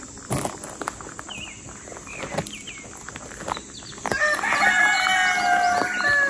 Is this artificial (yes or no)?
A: no